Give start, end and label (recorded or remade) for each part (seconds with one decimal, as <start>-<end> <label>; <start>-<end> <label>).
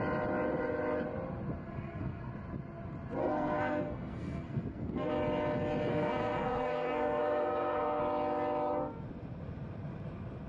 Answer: 0.0-1.6 recorded; 1.6-2.3 remade; 2.3-3.2 recorded; 3.2-5.1 remade; 5.1-5.9 recorded; 5.9-8.0 remade; 8.0-10.5 recorded